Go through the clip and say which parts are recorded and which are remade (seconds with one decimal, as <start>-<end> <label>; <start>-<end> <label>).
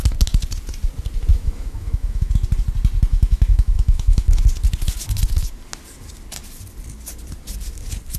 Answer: 0.0-1.3 recorded; 1.3-2.3 remade; 2.3-3.1 recorded; 3.1-4.4 remade; 4.4-8.2 recorded